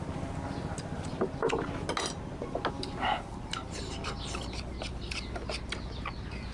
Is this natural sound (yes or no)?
yes